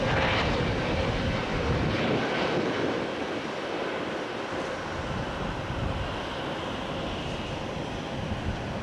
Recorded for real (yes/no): yes